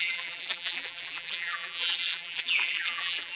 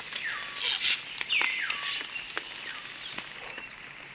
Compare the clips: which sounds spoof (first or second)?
first